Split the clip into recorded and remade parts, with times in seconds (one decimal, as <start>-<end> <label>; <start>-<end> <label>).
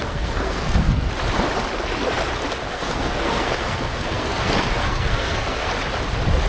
0.0-1.1 remade; 1.1-2.6 recorded; 2.6-5.7 remade; 5.7-6.5 recorded